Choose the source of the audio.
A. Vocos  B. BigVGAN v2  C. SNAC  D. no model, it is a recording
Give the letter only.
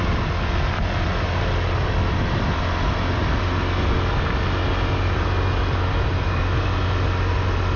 D